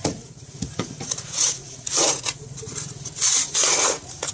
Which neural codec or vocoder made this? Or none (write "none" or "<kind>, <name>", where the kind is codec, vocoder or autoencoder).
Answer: vocoder, Vocos